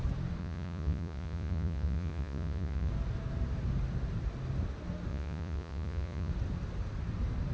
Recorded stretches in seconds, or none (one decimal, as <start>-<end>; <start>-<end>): 0.0-0.4; 2.9-5.1; 6.3-7.5

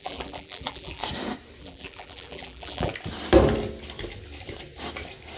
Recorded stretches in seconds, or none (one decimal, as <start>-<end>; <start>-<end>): 1.0-1.6; 2.9-5.4

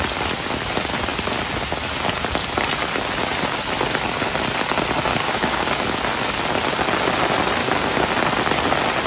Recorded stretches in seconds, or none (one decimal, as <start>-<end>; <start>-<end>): 0.0-5.1; 5.7-7.6; 8.1-9.1

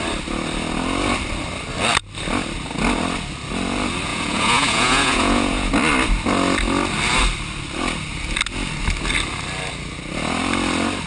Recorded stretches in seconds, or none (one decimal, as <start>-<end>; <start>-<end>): 0.0-4.1; 5.7-11.1

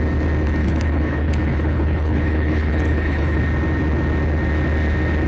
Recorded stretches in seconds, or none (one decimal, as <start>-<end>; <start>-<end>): 0.0-0.6; 3.4-5.3

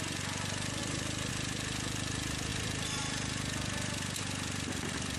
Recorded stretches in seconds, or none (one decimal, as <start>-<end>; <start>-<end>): 0.0-0.8; 1.3-5.2